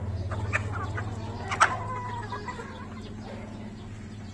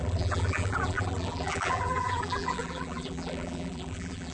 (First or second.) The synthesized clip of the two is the second